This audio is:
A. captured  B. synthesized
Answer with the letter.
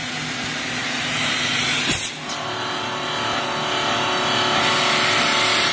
A